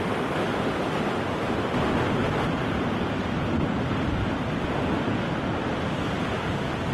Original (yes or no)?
yes